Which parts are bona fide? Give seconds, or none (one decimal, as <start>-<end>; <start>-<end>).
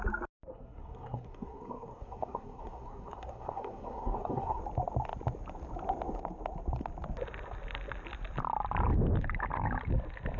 0.0-0.5; 4.6-10.4